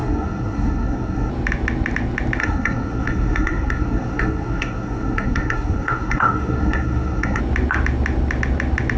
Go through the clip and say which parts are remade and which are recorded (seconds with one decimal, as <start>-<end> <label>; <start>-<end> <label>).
0.0-1.3 remade; 1.3-2.4 recorded; 2.4-7.4 remade; 7.4-9.0 recorded